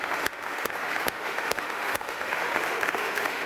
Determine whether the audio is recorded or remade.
remade